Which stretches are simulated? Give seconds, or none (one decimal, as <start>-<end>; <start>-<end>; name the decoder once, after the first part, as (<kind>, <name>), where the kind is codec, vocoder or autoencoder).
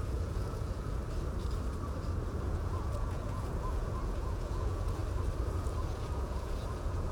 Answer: 0.0-1.0 (vocoder, Vocos); 2.2-5.0; 5.6-7.1